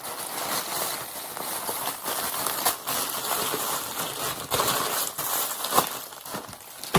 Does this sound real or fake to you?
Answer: real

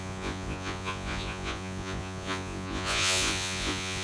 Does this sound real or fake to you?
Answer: fake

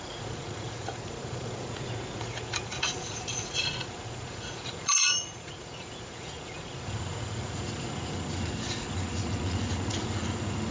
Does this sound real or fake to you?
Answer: fake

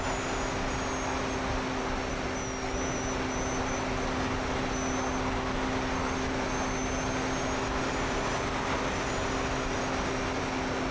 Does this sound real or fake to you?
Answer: real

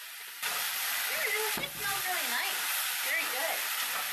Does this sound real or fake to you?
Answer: fake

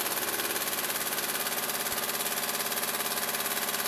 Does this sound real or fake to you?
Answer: real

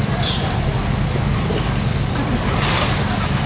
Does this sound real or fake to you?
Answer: real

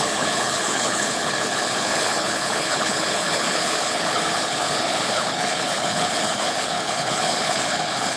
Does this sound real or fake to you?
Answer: fake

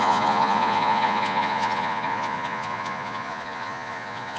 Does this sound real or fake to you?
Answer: fake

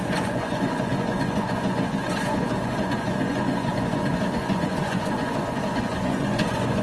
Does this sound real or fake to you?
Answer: fake